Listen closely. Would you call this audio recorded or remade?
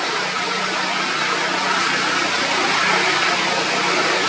recorded